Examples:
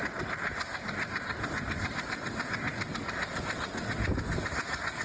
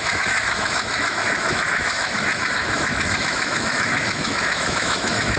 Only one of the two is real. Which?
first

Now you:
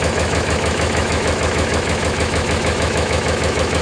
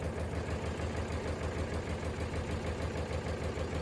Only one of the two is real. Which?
second